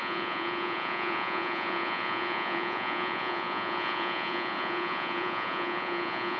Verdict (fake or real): fake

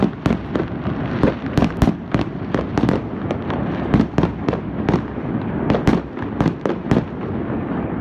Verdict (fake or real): fake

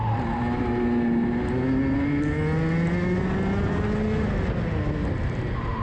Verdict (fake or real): real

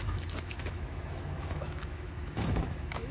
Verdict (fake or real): fake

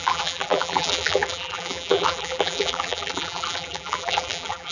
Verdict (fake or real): fake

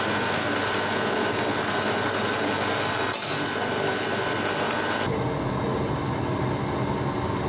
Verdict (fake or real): real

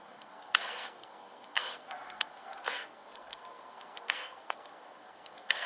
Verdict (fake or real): fake